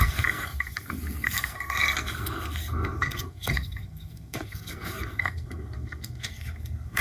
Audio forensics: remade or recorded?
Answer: remade